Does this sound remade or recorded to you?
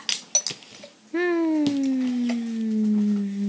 recorded